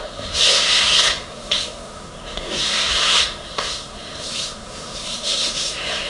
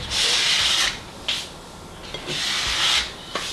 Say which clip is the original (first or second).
second